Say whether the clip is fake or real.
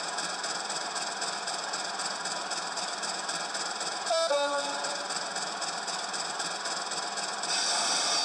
fake